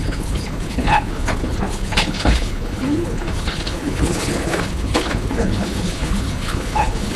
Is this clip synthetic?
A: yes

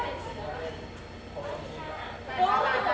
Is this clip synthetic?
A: no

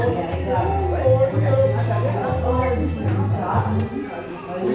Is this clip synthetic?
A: no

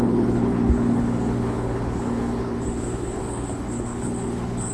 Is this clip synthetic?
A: yes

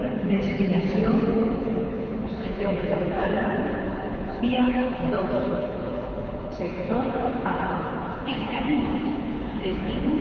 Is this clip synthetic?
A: yes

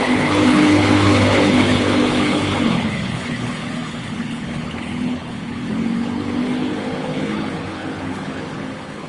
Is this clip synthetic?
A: yes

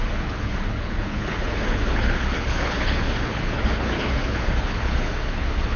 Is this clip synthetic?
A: yes